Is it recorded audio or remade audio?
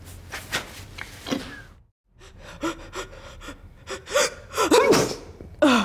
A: recorded